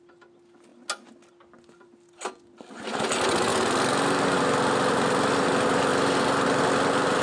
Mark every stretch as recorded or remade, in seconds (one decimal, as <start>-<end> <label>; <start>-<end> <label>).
0.0-7.2 recorded

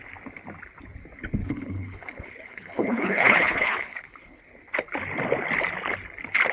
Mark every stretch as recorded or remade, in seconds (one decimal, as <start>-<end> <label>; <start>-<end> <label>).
0.0-1.4 recorded; 1.4-4.4 remade; 4.4-6.5 recorded

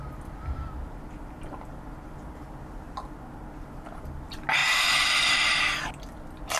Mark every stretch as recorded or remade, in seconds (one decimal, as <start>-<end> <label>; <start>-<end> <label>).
0.0-2.2 remade; 2.2-4.6 recorded; 4.6-5.6 remade; 5.6-6.6 recorded